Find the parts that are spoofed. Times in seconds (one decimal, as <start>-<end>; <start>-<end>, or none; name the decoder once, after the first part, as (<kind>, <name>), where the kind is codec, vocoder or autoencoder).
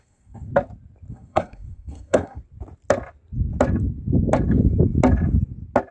0.0-0.5 (codec, SNAC); 1.1-2.4